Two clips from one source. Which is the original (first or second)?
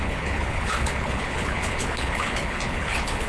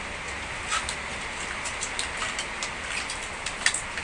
second